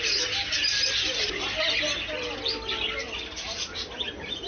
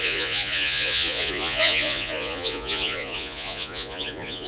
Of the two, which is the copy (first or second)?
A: second